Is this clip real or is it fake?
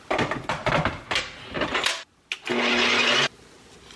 real